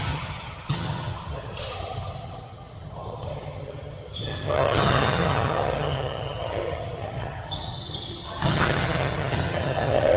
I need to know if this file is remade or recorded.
remade